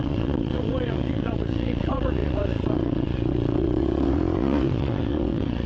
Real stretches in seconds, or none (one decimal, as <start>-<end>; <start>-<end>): none